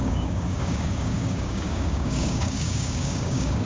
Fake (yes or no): yes